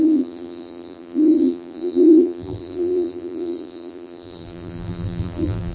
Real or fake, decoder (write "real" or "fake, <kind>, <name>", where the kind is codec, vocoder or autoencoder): fake, vocoder, BigVGAN v2